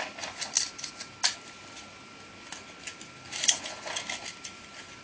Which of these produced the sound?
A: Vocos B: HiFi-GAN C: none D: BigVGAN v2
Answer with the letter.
C